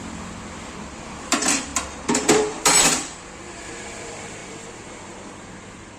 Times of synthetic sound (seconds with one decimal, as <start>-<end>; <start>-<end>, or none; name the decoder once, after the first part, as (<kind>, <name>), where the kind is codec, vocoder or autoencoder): 0.0-6.0 (vocoder, BigVGAN v2)